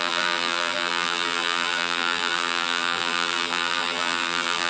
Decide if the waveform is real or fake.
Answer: fake